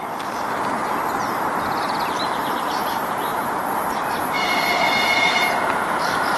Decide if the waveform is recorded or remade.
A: remade